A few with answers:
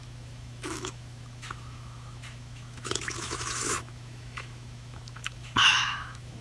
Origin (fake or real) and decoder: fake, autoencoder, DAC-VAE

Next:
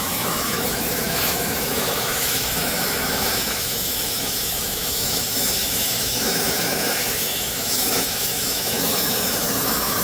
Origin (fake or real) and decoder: fake, autoencoder, DAC-VAE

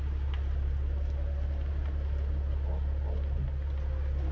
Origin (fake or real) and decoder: real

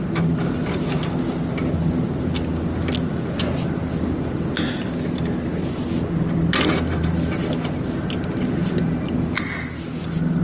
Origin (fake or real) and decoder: real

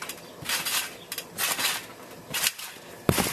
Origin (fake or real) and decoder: real